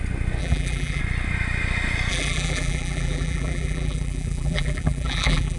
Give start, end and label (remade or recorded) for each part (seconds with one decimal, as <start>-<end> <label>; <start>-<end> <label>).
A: 0.0-0.4 recorded; 0.4-1.0 remade; 1.0-2.1 recorded; 2.1-5.6 remade